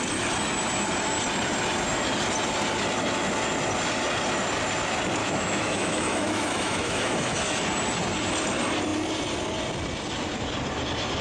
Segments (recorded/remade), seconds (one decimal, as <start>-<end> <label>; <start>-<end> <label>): 0.0-5.2 recorded; 5.2-7.6 remade; 7.6-11.2 recorded

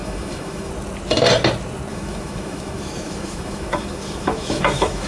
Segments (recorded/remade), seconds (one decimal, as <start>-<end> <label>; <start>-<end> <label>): 0.0-0.7 remade; 0.7-1.9 recorded; 1.9-5.1 remade

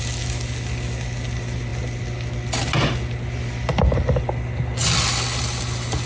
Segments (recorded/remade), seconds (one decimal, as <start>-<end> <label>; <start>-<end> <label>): 0.0-6.1 recorded